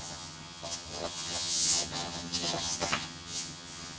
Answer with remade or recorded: remade